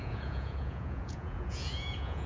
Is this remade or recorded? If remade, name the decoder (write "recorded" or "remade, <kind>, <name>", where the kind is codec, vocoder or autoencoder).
remade, vocoder, Vocos